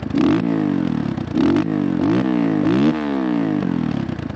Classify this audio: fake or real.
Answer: real